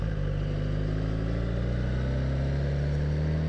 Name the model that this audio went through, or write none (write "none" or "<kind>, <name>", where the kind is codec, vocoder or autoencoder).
none